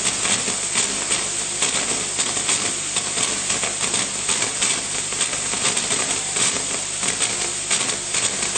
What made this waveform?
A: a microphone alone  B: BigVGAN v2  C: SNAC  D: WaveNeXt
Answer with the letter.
A